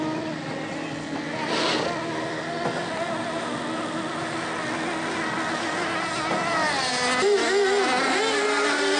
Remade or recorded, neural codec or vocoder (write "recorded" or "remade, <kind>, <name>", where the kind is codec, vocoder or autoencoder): recorded